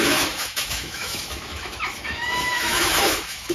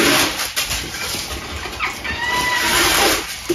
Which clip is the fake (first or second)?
first